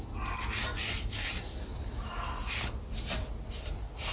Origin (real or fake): real